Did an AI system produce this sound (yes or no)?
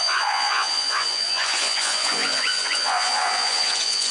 yes